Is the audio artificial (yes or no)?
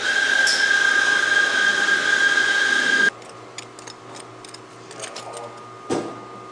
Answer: no